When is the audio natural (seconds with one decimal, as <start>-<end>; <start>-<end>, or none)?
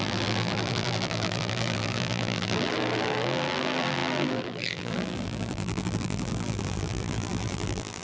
none